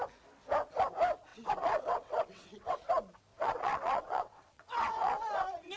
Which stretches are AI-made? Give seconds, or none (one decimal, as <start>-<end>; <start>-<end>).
1.3-2.9; 3.3-5.8